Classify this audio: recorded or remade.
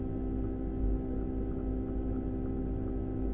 recorded